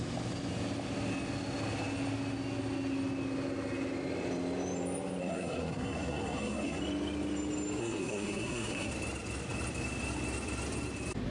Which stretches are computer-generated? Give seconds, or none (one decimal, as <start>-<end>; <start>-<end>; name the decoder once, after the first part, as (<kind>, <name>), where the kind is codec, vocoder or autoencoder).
5.2-6.8 (codec, SNAC); 7.8-8.9